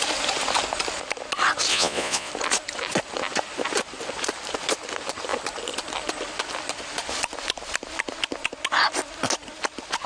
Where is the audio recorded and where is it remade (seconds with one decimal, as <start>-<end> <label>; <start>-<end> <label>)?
0.0-1.7 recorded; 1.7-2.3 remade; 2.3-10.1 recorded